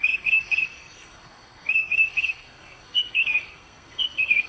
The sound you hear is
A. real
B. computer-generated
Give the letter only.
B